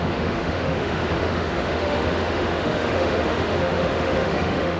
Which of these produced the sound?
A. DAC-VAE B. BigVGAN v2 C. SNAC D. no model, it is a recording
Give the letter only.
A